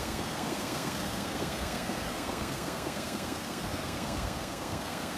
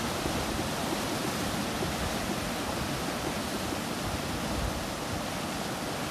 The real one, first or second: second